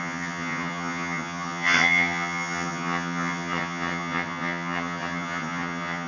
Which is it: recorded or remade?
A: remade